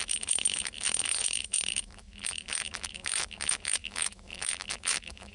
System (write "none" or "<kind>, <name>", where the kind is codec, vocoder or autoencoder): autoencoder, DAC-VAE